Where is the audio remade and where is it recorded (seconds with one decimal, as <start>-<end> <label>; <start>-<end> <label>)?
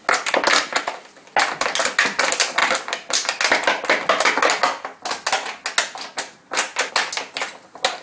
0.0-8.0 recorded